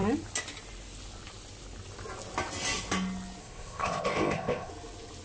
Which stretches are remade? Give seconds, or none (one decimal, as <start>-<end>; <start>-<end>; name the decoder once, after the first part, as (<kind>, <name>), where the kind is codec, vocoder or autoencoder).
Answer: 3.4-4.7 (codec, ZipCodec)